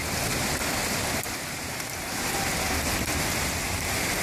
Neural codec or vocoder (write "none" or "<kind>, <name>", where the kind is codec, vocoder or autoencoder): none